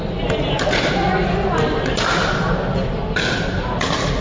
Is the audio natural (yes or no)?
yes